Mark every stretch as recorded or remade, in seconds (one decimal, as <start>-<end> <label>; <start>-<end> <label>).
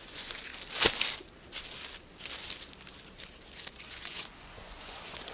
0.0-0.5 remade; 0.5-3.7 recorded; 3.7-5.3 remade